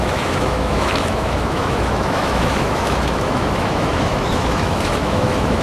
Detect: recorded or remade remade